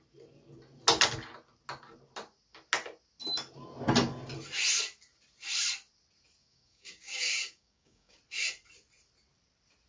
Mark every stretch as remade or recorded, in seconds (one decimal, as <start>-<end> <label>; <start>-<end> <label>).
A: 0.0-6.4 recorded; 6.4-8.2 remade; 8.2-9.9 recorded